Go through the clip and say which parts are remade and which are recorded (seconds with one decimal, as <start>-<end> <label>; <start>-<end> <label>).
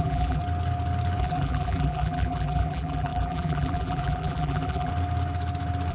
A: 0.0-0.4 remade; 0.4-1.2 recorded; 1.2-4.9 remade; 4.9-5.9 recorded